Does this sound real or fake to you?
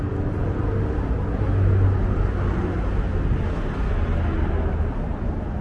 real